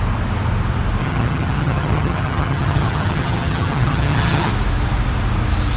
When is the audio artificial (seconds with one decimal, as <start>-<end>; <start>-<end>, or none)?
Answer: 1.0-4.5